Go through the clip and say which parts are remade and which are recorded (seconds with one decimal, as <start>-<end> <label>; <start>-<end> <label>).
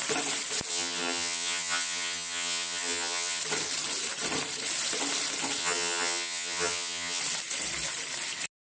0.0-0.7 recorded; 0.7-3.4 remade; 3.4-5.6 recorded; 5.6-7.2 remade; 7.2-8.6 recorded